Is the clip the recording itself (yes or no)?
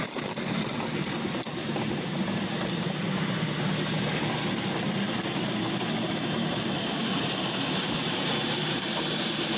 yes